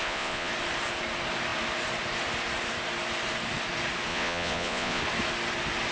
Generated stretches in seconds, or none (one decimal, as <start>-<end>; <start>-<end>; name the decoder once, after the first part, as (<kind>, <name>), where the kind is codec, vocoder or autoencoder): 0.0-0.5 (vocoder, Vocos); 4.1-5.0